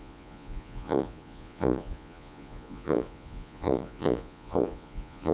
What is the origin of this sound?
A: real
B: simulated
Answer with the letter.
B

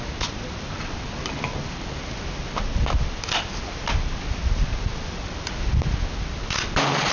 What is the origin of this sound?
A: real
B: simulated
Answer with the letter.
A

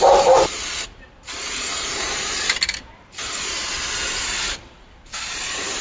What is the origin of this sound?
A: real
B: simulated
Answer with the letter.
B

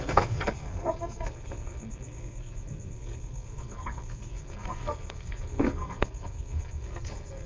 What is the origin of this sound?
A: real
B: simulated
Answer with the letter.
B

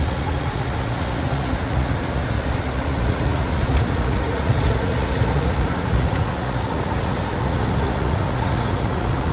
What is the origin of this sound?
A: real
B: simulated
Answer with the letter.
B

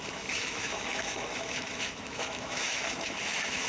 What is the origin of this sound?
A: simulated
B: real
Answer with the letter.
A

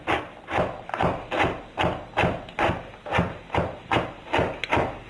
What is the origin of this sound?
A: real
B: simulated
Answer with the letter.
A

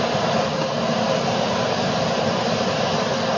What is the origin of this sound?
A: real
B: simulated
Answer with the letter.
A